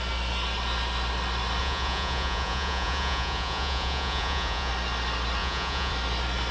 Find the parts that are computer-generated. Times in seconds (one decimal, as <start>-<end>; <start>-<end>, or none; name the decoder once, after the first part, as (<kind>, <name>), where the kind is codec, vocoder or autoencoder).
1.6-4.7 (vocoder, Vocos); 5.4-5.9